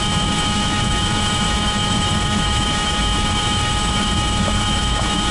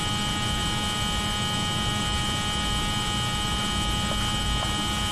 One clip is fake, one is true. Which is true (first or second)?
second